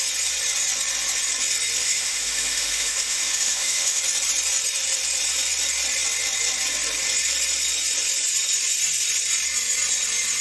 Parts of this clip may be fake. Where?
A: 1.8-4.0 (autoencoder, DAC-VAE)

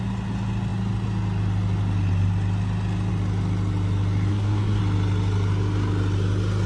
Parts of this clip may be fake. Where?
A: 4.3-4.8 (codec, SNAC)

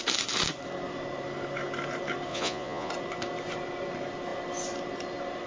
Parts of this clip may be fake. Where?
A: 2.3-2.9 (vocoder, Vocos)